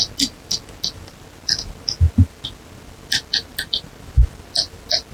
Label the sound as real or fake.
real